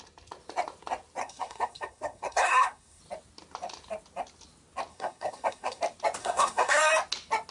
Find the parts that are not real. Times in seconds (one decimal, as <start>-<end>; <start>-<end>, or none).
1.2-3.0; 4.9-5.8; 6.2-6.8